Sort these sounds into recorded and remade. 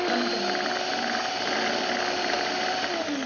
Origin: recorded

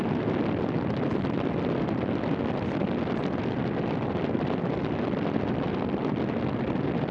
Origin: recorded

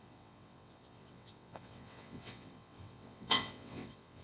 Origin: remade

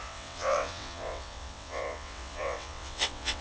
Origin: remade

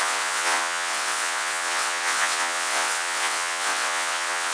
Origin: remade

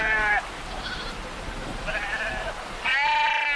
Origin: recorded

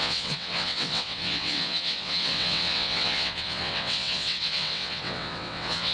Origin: remade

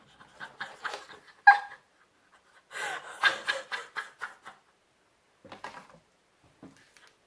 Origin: recorded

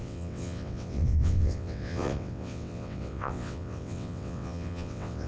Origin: remade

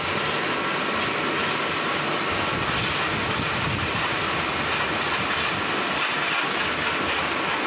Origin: recorded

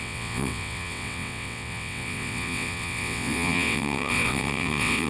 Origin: remade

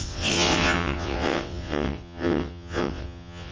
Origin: remade